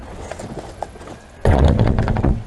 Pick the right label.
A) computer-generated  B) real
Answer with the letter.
A